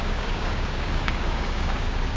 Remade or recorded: remade